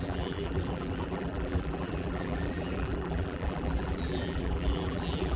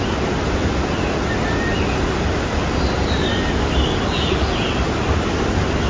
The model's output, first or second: first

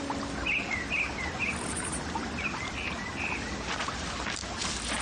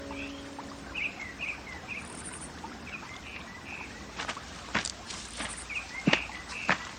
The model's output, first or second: second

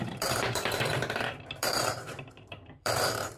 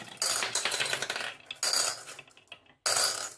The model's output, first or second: first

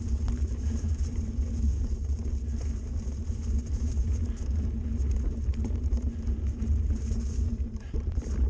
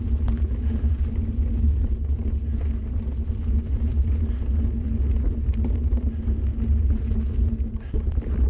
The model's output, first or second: first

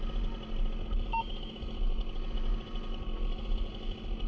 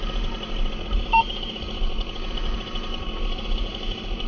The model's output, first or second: second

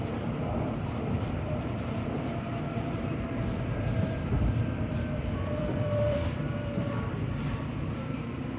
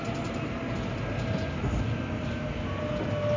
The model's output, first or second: first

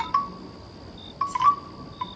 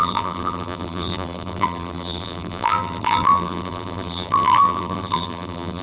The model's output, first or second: second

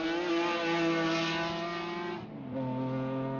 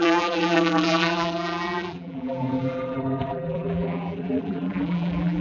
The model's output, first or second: second